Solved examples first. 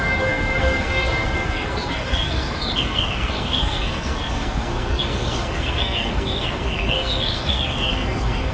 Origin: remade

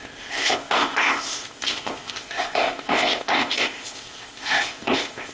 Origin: remade